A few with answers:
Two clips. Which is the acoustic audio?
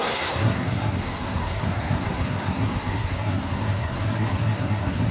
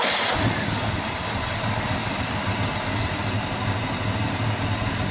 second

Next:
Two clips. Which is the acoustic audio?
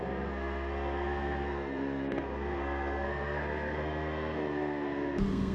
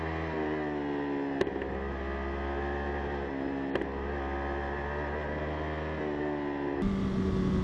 second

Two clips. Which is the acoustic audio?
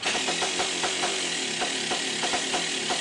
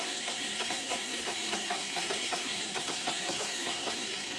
first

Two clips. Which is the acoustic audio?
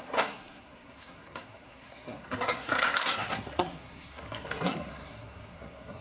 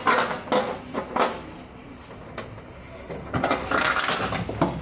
second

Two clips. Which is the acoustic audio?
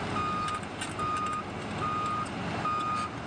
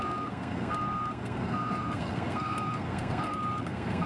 first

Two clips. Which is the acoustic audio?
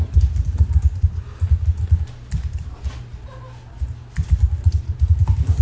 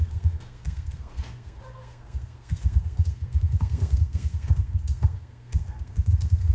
first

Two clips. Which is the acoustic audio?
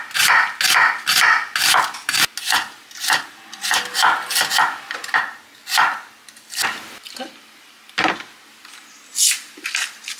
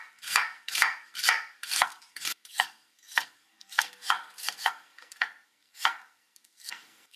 first